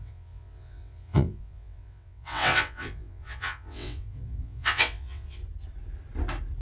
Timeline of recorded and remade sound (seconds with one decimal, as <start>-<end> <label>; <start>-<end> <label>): 0.0-5.4 remade; 5.4-6.6 recorded